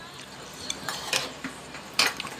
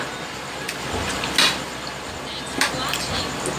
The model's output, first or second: first